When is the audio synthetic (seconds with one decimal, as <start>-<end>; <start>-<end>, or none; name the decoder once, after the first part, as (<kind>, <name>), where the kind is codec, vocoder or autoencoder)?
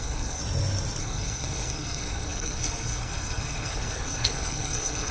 0.0-0.4 (codec, SNAC); 1.0-5.1